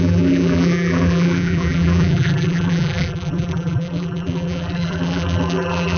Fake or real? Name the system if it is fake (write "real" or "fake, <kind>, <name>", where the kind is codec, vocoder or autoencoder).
fake, vocoder, BigVGAN v2